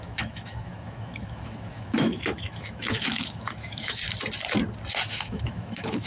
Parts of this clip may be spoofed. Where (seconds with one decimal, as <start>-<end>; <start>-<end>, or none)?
0.0-4.0; 5.1-6.1